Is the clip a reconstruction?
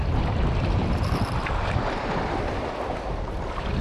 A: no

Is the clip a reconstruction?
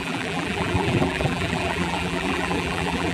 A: yes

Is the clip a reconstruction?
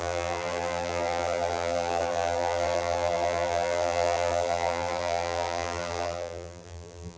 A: yes